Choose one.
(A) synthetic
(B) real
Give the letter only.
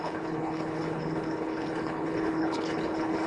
A